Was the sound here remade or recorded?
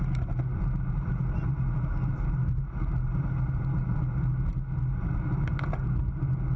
recorded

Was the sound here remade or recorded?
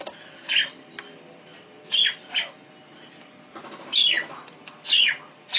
recorded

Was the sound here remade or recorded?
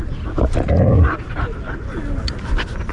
recorded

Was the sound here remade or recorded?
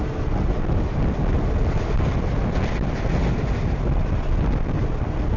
recorded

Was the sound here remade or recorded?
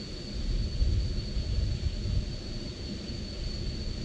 recorded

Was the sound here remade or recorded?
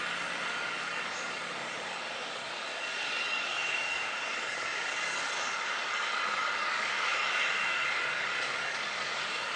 remade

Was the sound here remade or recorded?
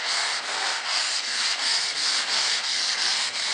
remade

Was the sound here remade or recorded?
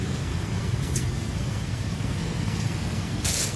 remade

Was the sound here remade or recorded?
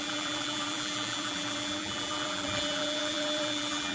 remade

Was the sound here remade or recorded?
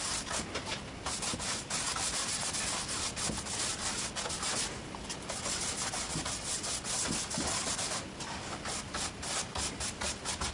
recorded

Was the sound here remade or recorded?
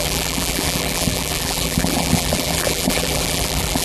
remade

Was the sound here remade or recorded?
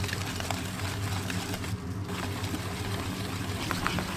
recorded